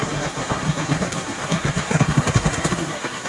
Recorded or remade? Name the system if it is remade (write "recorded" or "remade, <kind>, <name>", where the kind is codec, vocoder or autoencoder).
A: remade, codec, SNAC